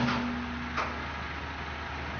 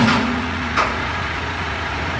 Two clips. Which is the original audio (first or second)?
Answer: first